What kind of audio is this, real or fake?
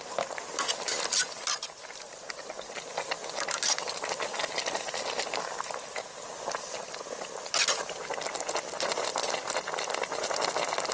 real